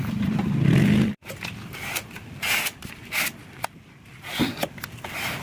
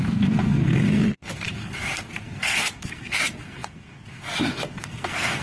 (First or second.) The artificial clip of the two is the second